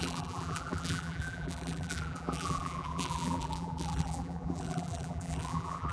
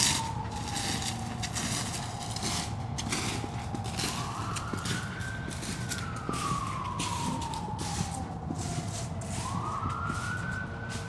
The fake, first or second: first